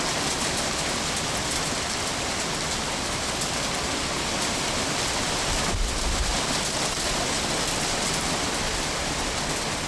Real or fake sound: real